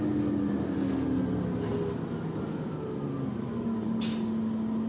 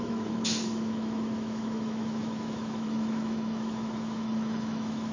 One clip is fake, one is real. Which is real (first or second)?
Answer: first